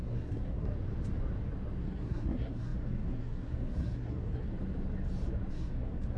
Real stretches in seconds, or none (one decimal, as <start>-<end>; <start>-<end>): 0.7-1.8; 4.5-5.5